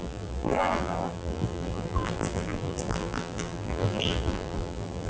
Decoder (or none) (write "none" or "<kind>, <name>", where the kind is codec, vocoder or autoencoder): vocoder, BigVGAN v2